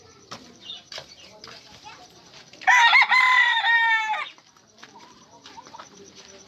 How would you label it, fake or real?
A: fake